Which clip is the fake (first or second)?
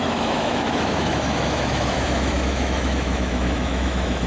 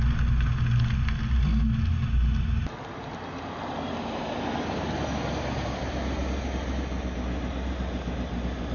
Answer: first